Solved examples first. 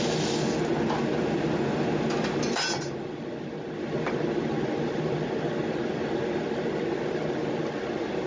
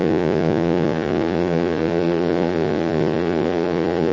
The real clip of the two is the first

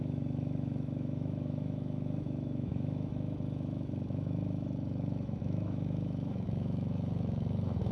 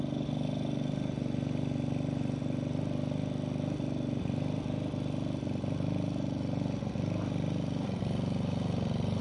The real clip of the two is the second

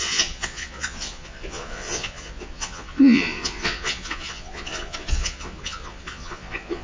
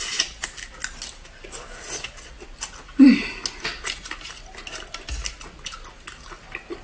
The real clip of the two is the second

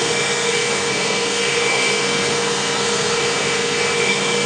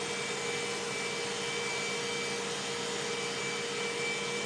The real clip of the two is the second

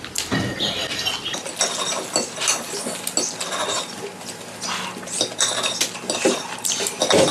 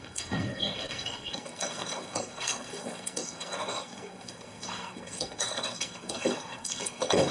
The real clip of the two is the first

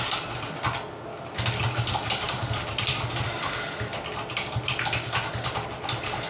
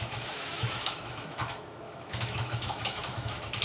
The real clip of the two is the first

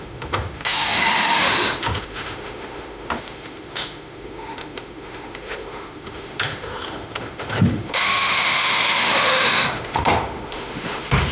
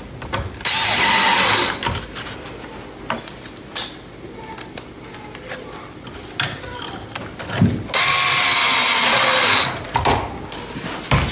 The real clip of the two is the second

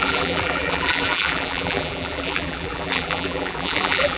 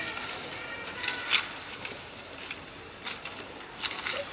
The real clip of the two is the second